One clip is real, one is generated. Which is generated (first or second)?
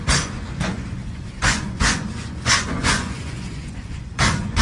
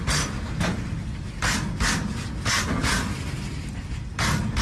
first